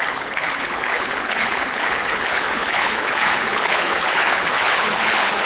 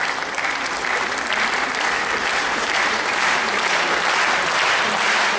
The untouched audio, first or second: second